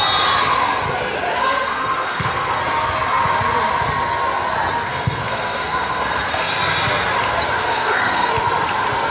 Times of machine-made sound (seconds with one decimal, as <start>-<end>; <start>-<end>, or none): 1.4-2.6; 4.9-6.5; 7.6-8.3